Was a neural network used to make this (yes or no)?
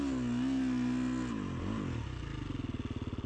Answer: no